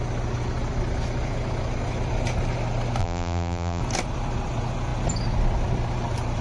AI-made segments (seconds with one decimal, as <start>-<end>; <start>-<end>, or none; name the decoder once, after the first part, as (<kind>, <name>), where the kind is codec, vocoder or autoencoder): 3.0-3.8 (vocoder, BigVGAN v2)